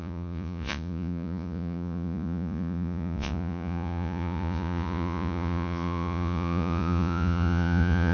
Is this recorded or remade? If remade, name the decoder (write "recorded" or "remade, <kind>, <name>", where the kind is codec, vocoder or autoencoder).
remade, vocoder, Vocos